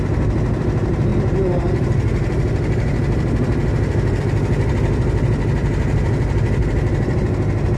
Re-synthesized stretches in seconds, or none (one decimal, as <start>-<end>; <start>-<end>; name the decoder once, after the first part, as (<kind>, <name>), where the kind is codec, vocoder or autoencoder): none